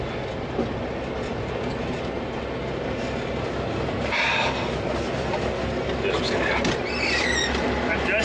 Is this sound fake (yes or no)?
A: no